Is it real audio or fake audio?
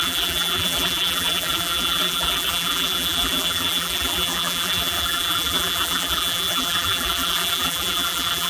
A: fake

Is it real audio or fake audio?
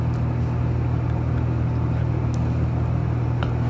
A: real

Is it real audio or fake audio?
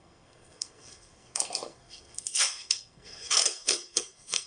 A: fake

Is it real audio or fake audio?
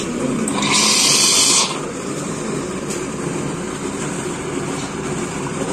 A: real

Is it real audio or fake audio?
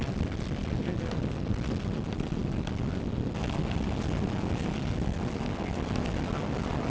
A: real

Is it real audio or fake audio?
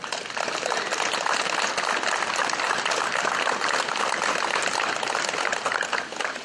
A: real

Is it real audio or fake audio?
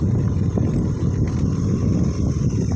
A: real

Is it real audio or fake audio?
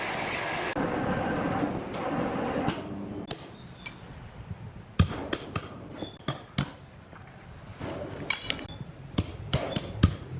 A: real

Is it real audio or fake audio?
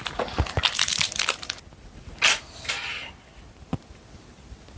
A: real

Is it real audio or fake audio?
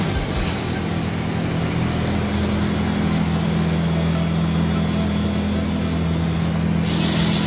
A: real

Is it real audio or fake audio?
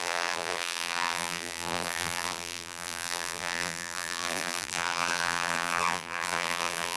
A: fake